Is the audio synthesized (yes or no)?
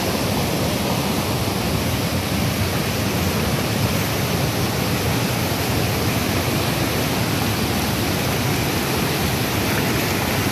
no